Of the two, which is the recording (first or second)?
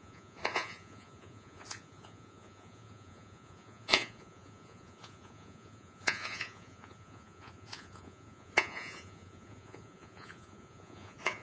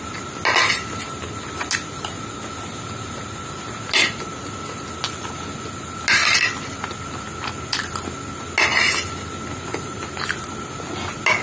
second